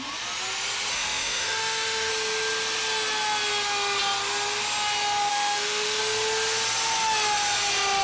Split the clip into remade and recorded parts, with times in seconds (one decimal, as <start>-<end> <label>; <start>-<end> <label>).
0.0-0.9 recorded; 0.9-2.1 remade; 2.1-5.3 recorded; 5.3-6.0 remade; 6.0-8.0 recorded